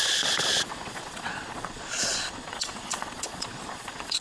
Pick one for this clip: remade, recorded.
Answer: remade